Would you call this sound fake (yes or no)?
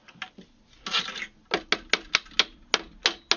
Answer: no